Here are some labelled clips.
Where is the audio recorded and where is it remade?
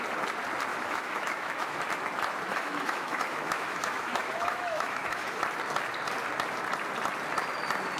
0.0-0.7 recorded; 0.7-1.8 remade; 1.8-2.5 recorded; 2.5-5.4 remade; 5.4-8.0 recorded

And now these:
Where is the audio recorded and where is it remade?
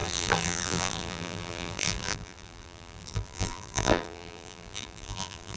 0.0-5.6 remade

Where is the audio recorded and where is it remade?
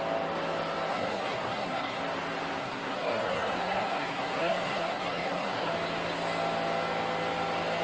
0.0-0.9 recorded; 0.9-2.0 remade; 2.0-2.6 recorded; 2.6-5.7 remade; 5.7-7.8 recorded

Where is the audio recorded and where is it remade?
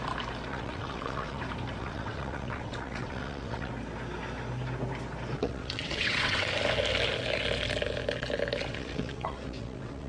0.0-0.5 recorded; 0.5-1.4 remade; 1.4-1.8 recorded; 1.8-3.7 remade; 3.7-5.4 recorded; 5.4-6.5 remade; 6.5-8.6 recorded; 8.6-10.1 remade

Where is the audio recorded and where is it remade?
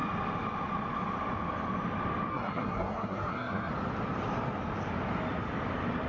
0.0-2.3 recorded; 2.3-3.7 remade; 3.7-6.1 recorded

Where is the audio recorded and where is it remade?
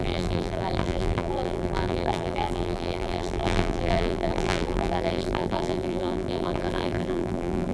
0.0-7.7 remade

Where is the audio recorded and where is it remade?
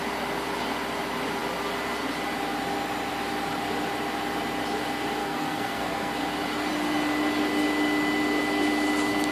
0.0-5.2 recorded; 5.2-6.1 remade; 6.1-9.3 recorded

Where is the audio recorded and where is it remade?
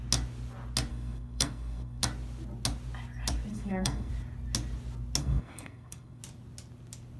0.0-0.9 recorded; 0.9-2.0 remade; 2.0-3.5 recorded; 3.5-4.1 remade; 4.1-5.2 recorded; 5.2-6.2 remade; 6.2-7.2 recorded